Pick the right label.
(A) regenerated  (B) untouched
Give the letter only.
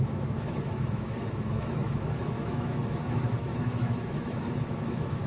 A